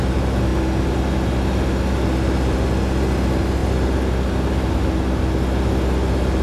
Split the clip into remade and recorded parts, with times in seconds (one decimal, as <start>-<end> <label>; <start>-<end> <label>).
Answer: 0.0-6.4 recorded